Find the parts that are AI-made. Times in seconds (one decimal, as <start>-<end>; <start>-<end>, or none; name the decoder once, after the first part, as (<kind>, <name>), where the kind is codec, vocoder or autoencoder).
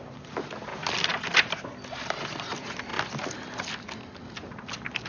none